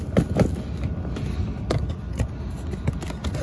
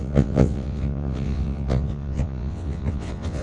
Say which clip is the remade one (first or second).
second